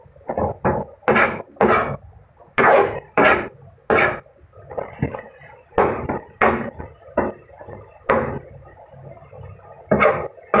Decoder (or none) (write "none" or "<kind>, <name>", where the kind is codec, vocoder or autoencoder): none